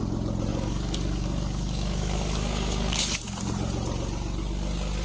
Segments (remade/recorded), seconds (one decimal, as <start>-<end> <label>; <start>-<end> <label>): 0.0-0.5 recorded; 0.5-3.2 remade; 3.2-5.0 recorded